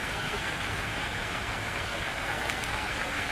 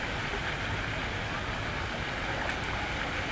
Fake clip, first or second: first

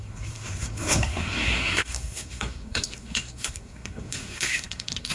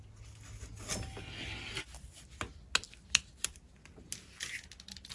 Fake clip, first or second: first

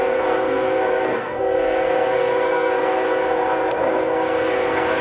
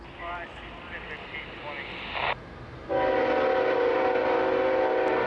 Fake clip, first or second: first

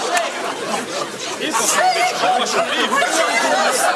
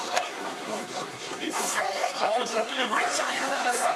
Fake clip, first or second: second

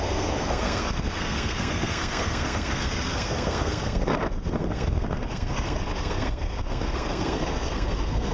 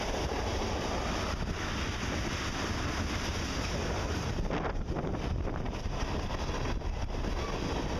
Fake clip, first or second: first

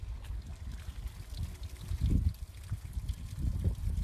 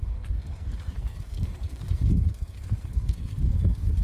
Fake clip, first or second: second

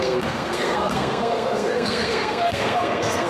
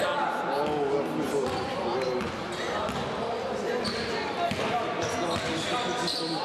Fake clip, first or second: first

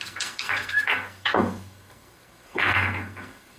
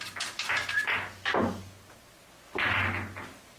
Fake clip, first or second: first